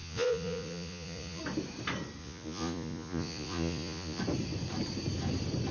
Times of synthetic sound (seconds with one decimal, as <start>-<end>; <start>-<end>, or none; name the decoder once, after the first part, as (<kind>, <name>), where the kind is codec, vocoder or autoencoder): 0.0-1.4 (vocoder, Vocos); 2.2-4.2